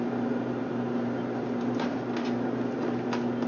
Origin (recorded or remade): recorded